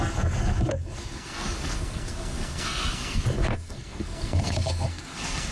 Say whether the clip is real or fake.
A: fake